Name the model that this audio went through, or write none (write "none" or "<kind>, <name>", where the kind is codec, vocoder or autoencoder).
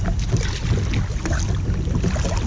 none